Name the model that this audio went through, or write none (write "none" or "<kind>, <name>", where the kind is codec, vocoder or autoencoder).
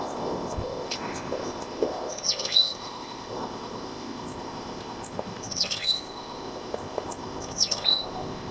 codec, ZipCodec